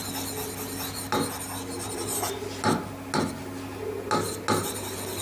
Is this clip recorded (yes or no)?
yes